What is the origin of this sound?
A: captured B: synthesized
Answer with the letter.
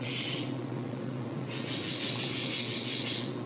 B